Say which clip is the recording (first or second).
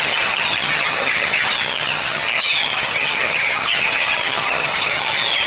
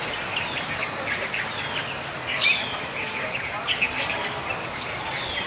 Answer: second